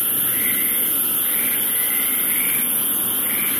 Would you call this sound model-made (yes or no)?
no